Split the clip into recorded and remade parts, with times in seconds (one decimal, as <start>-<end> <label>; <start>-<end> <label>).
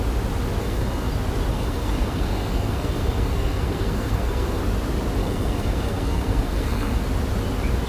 0.0-0.6 recorded; 0.6-1.1 remade; 1.1-1.5 recorded; 1.5-4.6 remade; 4.6-5.2 recorded; 5.2-7.0 remade; 7.0-7.9 recorded